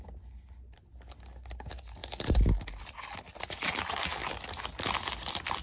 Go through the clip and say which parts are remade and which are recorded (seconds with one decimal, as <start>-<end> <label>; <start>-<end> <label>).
0.0-5.6 recorded